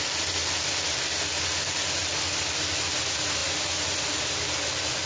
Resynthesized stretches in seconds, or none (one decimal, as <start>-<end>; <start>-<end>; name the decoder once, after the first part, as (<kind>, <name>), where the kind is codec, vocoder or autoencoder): none